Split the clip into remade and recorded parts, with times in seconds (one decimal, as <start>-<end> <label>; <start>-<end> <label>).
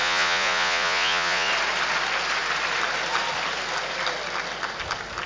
0.0-1.5 remade; 1.5-5.3 recorded